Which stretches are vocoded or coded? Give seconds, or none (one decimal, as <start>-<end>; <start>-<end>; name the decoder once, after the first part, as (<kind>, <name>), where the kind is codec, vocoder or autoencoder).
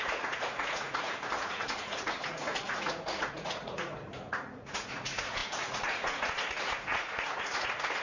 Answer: 0.0-8.0 (vocoder, Vocos)